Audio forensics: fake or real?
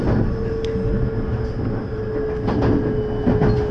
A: real